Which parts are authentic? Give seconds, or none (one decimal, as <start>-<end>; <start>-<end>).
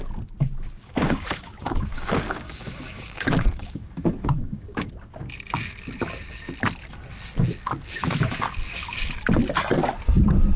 0.0-0.8; 4.9-10.6